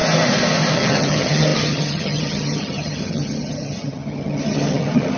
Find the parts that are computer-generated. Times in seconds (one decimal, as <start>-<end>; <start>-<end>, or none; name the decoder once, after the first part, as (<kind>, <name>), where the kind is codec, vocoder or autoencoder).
0.7-5.2 (vocoder, HiFi-GAN)